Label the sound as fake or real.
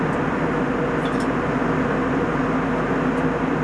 real